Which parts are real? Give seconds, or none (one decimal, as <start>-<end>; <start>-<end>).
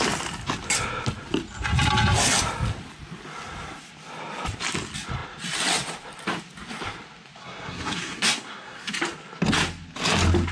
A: 0.0-7.4; 8.9-10.5